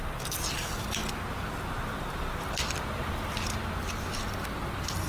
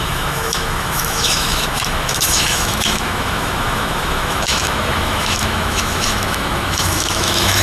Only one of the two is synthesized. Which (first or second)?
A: second